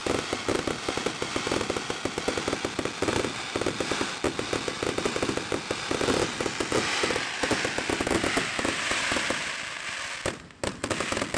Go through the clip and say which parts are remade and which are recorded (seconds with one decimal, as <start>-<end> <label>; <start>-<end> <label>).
0.0-11.4 recorded

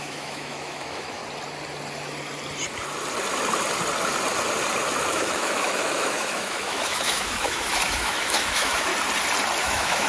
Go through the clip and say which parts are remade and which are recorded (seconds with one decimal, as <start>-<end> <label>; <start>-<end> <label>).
0.0-1.2 remade; 1.2-5.1 recorded; 5.1-8.9 remade; 8.9-9.6 recorded; 9.6-10.1 remade

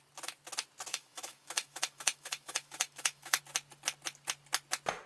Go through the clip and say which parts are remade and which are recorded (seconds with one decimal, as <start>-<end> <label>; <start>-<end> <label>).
0.0-0.9 recorded; 0.9-3.4 remade; 3.4-5.1 recorded

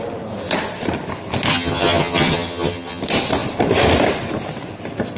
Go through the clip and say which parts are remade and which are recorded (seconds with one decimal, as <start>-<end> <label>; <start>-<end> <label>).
0.0-1.5 recorded; 1.5-3.0 remade; 3.0-5.2 recorded

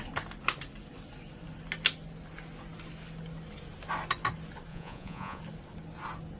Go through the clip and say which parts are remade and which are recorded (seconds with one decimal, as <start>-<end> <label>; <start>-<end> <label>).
0.0-4.7 recorded; 4.7-5.4 remade; 5.4-6.4 recorded